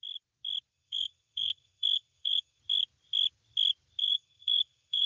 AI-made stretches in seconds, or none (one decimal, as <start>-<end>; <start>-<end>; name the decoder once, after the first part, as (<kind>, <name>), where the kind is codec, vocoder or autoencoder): 0.7-2.6 (codec, SNAC); 4.0-5.1